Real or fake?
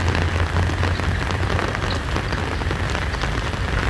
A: real